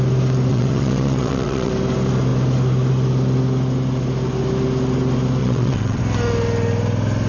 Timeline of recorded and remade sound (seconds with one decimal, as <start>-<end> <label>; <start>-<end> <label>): 0.0-0.5 recorded; 0.5-1.7 remade; 1.7-5.4 recorded; 5.4-6.0 remade; 6.0-7.3 recorded